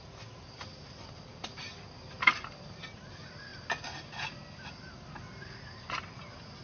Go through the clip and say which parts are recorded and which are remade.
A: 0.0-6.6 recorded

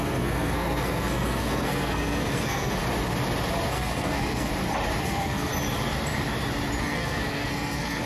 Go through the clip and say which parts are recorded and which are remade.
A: 0.0-2.8 remade; 2.8-3.7 recorded; 3.7-4.5 remade; 4.5-5.0 recorded; 5.0-5.5 remade; 5.5-6.8 recorded; 6.8-8.1 remade

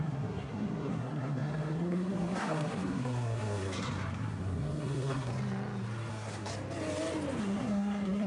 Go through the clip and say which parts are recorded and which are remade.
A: 0.0-5.3 remade; 5.3-6.1 recorded; 6.1-6.5 remade; 6.5-7.4 recorded; 7.4-8.3 remade

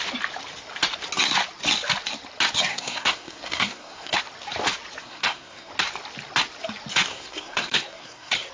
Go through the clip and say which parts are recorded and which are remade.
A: 0.0-2.7 recorded; 2.7-4.2 remade; 4.2-5.0 recorded; 5.0-5.7 remade; 5.7-7.1 recorded; 7.1-8.5 remade

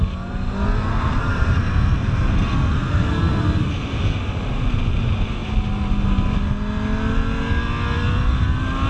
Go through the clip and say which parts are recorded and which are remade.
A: 0.0-0.9 recorded; 0.9-3.4 remade; 3.4-8.9 recorded

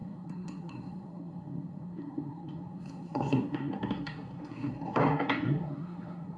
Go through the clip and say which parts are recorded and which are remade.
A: 0.0-6.4 remade

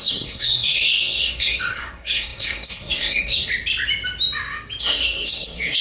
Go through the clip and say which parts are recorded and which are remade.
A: 0.0-3.5 remade; 3.5-4.8 recorded; 4.8-5.8 remade